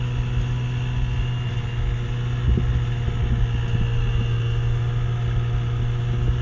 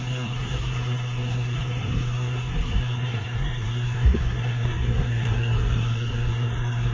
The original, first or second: first